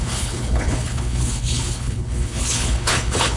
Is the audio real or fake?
fake